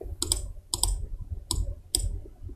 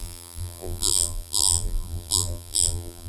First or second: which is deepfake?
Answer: second